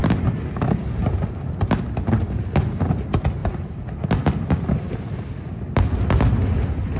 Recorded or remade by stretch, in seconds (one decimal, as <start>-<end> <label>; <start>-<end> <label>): 0.0-1.0 remade; 1.0-7.0 recorded